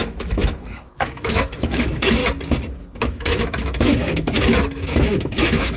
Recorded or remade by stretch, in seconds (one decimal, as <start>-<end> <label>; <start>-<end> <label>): 0.0-2.2 remade; 2.2-3.0 recorded; 3.0-5.8 remade